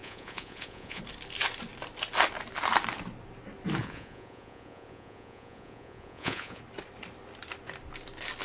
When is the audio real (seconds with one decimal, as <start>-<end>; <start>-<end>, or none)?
1.0-3.8; 6.6-8.4